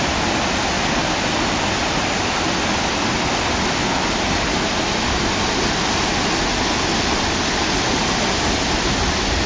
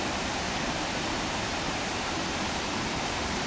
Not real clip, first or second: second